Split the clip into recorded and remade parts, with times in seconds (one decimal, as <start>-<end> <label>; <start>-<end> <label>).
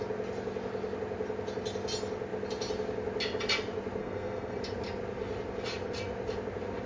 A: 0.0-4.0 recorded; 4.0-4.6 remade; 4.6-6.9 recorded